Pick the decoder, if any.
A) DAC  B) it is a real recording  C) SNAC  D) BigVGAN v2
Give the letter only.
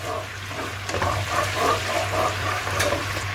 D